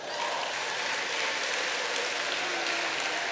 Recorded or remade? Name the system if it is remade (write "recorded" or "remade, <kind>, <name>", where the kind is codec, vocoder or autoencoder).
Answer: recorded